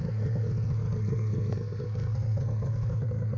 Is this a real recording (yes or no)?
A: no